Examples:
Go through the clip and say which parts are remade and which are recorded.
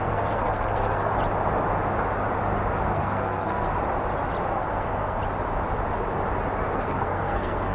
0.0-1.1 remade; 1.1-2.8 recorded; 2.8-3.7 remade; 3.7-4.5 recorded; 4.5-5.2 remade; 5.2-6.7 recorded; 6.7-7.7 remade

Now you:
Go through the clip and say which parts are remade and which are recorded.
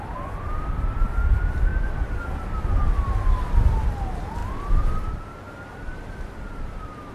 0.0-7.1 recorded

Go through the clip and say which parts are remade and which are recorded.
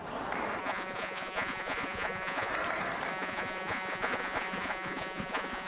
0.0-0.6 recorded; 0.6-2.5 remade; 2.5-3.1 recorded; 3.1-5.7 remade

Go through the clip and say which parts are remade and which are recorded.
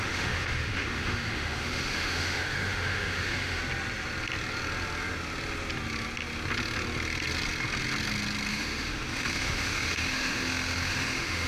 0.0-3.6 remade; 3.6-8.5 recorded; 8.5-11.5 remade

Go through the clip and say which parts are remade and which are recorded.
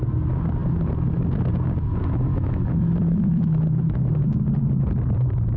0.0-2.3 recorded; 2.3-4.1 remade; 4.1-5.6 recorded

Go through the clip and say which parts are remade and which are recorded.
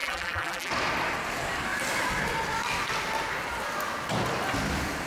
0.0-0.7 remade; 0.7-5.1 recorded